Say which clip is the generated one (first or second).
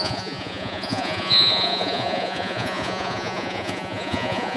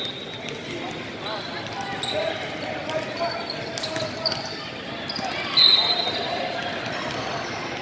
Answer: first